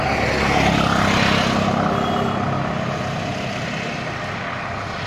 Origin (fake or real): real